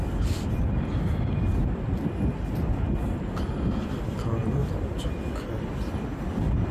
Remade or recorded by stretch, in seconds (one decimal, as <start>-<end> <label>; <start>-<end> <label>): 0.0-6.7 recorded